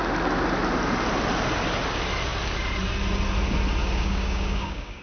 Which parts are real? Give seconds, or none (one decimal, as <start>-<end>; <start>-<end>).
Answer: 0.0-3.8